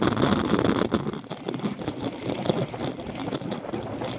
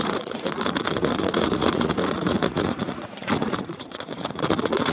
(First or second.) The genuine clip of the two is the first